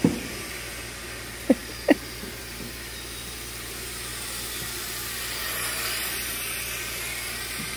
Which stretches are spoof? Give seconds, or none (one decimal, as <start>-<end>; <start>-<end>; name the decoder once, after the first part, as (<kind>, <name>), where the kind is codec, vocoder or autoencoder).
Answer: 0.0-7.8 (vocoder, BigVGAN v2)